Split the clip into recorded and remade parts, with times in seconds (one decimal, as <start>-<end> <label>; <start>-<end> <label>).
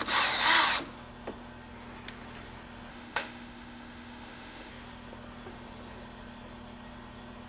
0.0-2.9 recorded; 2.9-4.7 remade; 4.7-7.5 recorded